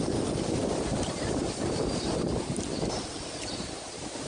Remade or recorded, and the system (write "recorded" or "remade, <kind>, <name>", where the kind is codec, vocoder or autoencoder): recorded